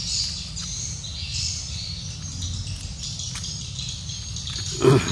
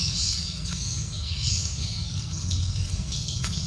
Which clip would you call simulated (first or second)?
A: second